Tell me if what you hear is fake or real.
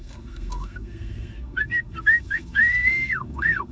fake